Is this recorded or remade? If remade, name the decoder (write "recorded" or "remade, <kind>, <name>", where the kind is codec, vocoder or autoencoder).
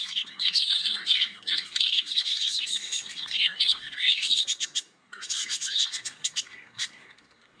remade, codec, SNAC